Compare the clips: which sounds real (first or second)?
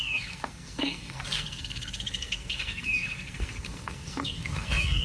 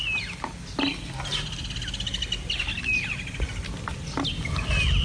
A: second